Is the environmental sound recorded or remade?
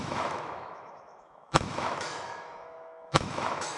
remade